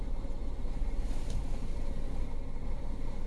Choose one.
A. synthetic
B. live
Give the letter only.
B